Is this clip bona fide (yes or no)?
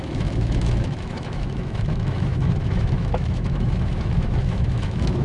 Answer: no